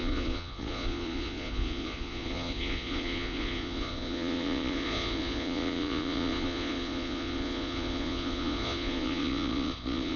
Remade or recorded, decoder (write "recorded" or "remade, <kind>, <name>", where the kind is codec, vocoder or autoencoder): remade, vocoder, Vocos